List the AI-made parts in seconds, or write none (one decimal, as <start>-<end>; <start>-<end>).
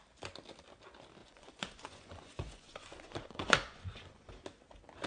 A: 1.2-4.3